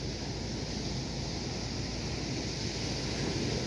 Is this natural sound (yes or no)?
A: yes